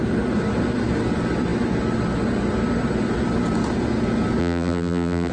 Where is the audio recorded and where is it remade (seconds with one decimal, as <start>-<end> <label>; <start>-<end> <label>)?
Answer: 0.0-4.4 recorded; 4.4-5.3 remade